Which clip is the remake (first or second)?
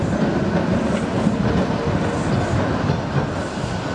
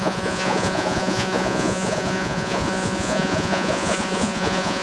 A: second